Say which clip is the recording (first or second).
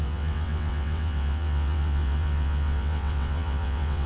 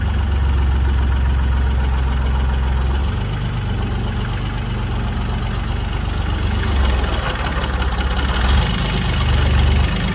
second